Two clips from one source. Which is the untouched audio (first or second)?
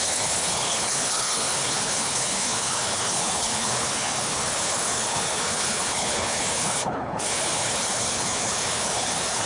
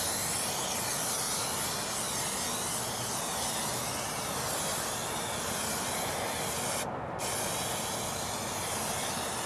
second